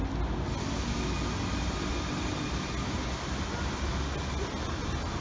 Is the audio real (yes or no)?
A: yes